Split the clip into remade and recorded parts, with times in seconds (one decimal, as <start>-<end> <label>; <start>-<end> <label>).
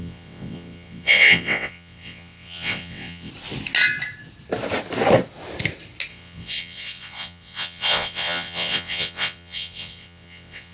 0.0-3.3 remade; 3.3-6.1 recorded; 6.1-10.7 remade